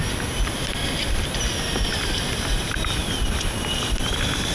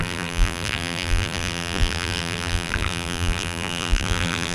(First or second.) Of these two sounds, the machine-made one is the second